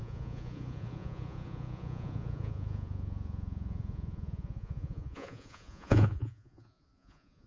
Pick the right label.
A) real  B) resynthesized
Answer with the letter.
B